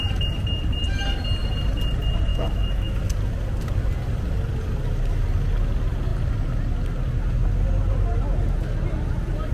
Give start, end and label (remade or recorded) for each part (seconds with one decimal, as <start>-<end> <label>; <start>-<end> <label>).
0.0-2.3 recorded; 2.3-3.0 remade; 3.0-9.5 recorded